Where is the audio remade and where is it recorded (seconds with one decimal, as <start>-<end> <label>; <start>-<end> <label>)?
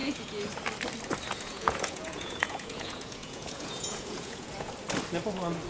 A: 0.0-0.5 remade; 0.5-1.3 recorded; 1.3-4.7 remade; 4.7-5.7 recorded